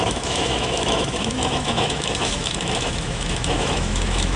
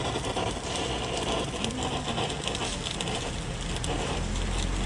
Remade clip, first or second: first